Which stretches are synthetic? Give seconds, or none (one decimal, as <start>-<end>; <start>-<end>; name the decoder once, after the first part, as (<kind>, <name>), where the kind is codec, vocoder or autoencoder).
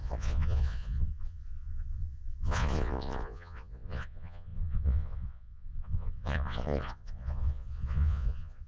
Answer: 0.0-8.7 (vocoder, Vocos)